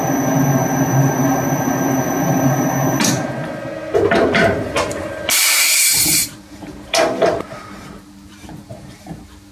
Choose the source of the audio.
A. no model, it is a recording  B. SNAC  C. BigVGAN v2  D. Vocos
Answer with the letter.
C